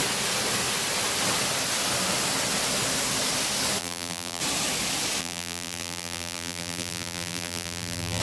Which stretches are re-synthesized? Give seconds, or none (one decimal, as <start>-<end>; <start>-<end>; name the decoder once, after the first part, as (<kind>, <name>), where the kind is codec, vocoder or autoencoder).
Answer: 3.8-4.4 (vocoder, BigVGAN v2); 5.2-8.2